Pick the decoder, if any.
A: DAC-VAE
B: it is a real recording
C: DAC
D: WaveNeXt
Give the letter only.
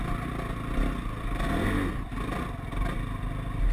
B